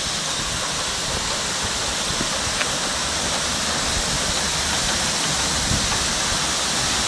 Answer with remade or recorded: recorded